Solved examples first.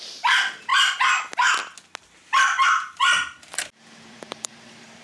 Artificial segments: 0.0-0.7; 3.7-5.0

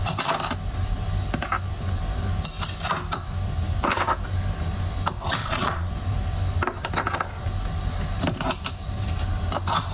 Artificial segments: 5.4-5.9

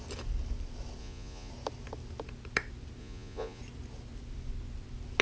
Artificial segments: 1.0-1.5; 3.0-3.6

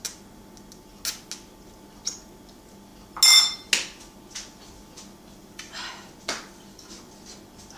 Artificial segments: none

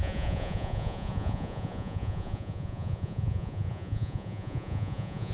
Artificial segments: 0.0-5.3

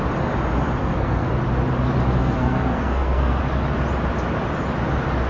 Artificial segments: 0.8-1.3; 2.2-3.4

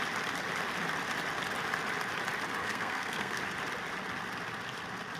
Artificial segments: 2.6-3.4

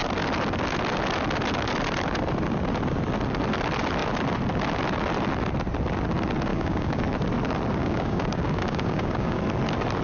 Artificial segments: 6.5-7.0; 7.8-9.4